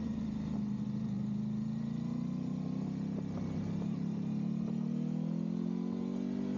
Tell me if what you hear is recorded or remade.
recorded